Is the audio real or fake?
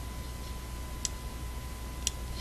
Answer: real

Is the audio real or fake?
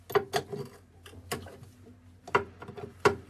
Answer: real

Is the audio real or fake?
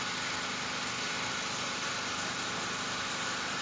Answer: real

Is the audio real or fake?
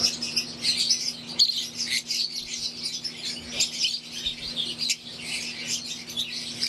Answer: real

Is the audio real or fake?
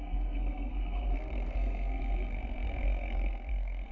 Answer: fake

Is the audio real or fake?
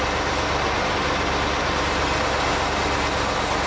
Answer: real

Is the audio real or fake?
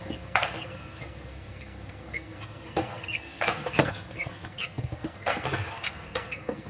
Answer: fake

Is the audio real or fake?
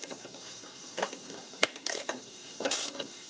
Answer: fake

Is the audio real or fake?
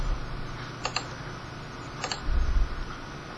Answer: real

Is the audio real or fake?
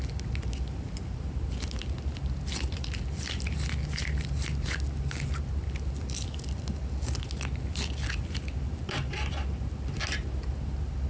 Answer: real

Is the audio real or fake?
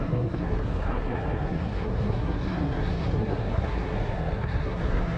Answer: fake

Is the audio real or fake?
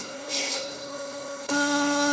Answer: fake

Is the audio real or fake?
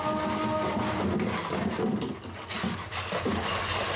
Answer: real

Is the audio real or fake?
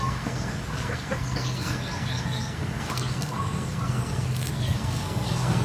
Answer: fake